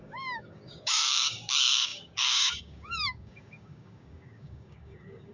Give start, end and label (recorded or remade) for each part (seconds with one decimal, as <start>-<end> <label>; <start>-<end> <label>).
0.0-5.3 remade